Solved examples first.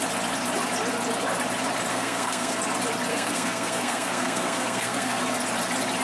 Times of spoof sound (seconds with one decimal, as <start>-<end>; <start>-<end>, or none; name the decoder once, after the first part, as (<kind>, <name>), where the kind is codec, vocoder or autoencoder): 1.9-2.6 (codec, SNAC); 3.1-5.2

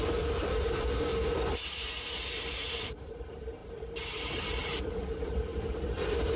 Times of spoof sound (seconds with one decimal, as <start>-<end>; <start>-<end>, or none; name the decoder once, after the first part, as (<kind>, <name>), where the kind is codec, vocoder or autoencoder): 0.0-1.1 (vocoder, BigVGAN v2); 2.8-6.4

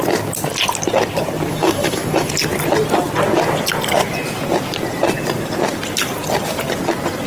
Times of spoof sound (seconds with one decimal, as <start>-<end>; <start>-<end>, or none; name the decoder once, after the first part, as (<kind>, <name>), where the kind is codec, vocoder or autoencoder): 1.5-2.3 (autoencoder, DAC-VAE)

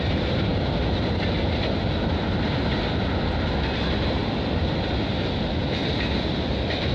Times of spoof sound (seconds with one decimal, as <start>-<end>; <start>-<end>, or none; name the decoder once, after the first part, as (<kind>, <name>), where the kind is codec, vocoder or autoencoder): none